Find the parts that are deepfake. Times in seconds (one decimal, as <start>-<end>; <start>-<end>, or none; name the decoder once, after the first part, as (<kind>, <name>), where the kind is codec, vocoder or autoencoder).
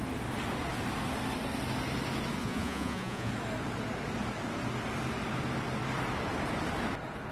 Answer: 2.4-3.3 (vocoder, Vocos)